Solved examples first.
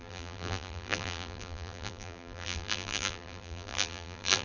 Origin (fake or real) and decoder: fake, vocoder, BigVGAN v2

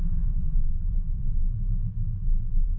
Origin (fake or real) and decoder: fake, vocoder, BigVGAN v2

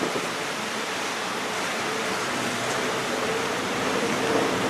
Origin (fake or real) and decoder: fake, vocoder, BigVGAN v2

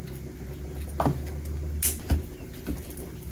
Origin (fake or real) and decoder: real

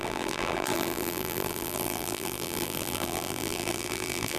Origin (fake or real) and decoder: fake, vocoder, BigVGAN v2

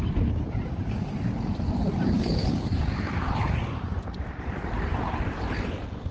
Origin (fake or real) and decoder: fake, vocoder, BigVGAN v2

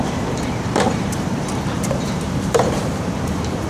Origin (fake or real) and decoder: fake, vocoder, BigVGAN v2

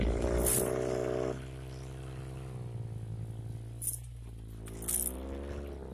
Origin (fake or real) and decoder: real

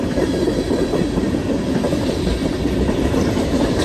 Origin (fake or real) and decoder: fake, vocoder, BigVGAN v2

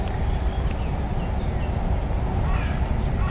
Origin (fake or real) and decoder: real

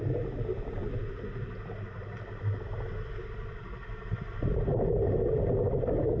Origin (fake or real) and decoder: fake, vocoder, BigVGAN v2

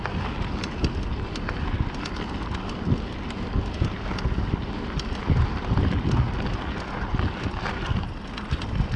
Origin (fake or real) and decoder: real